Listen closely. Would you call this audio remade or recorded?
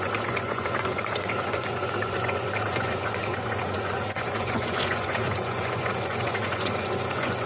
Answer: remade